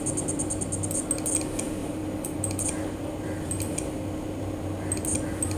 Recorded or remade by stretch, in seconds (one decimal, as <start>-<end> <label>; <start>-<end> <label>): 0.0-1.8 recorded; 1.8-3.5 remade; 3.5-5.6 recorded